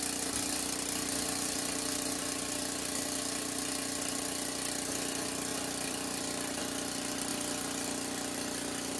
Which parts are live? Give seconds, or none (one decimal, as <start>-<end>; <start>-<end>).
0.0-5.5; 6.6-9.0

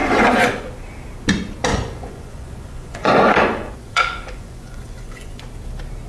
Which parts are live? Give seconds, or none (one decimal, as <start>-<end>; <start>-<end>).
0.7-1.7; 5.4-6.1